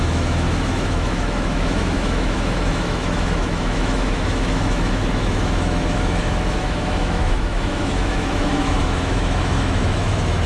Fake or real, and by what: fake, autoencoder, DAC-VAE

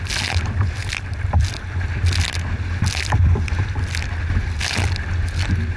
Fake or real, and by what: real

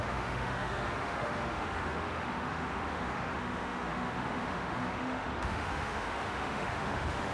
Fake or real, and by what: fake, autoencoder, DAC-VAE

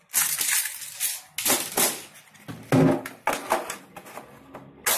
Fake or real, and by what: real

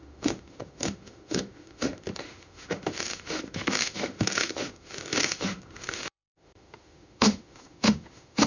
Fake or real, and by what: fake, autoencoder, DAC-VAE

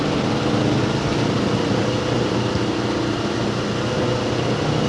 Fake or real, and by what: real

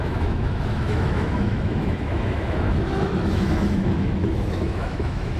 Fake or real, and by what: fake, autoencoder, DAC-VAE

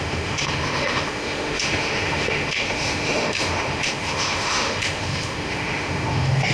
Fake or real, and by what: fake, autoencoder, DAC-VAE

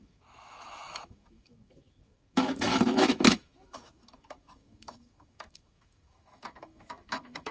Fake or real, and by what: fake, autoencoder, DAC-VAE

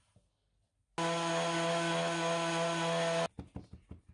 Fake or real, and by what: real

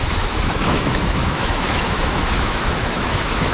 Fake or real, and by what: fake, autoencoder, DAC-VAE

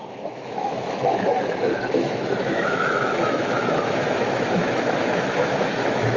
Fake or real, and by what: fake, autoencoder, DAC-VAE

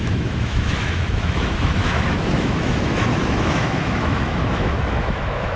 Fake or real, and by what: fake, autoencoder, DAC-VAE